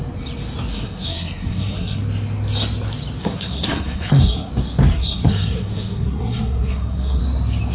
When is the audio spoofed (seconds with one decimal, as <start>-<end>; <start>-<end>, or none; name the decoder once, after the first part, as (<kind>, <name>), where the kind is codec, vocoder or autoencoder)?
0.7-2.0 (codec, SNAC); 3.2-4.5; 4.9-7.2